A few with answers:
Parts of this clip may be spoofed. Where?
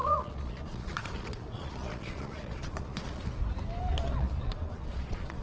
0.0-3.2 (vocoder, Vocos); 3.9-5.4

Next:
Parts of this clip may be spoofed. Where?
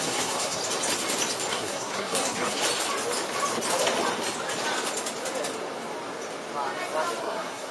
0.0-0.6 (codec, SNAC); 1.5-2.6; 7.2-7.7